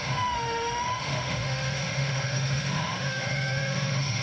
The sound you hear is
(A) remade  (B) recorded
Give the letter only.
A